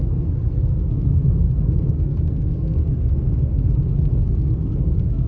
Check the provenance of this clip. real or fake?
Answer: fake